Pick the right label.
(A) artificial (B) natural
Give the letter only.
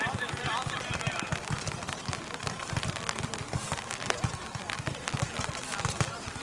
B